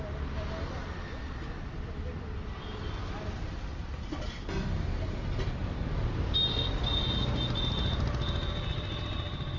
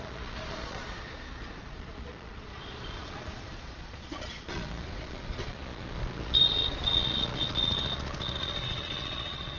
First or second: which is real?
first